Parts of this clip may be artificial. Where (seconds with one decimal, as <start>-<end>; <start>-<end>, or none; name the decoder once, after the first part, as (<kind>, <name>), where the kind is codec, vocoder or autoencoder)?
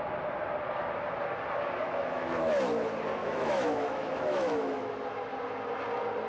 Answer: 1.8-2.5 (autoencoder, DAC-VAE); 3.2-4.9